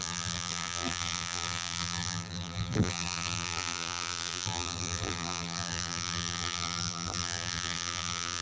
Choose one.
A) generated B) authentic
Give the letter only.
A